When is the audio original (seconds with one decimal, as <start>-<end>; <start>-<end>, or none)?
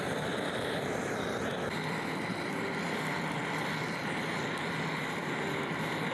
0.0-6.1